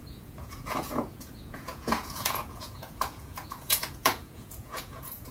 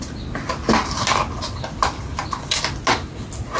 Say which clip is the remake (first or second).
first